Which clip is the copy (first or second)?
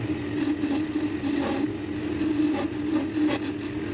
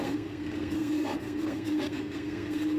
second